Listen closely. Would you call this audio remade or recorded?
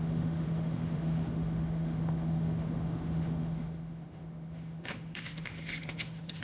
remade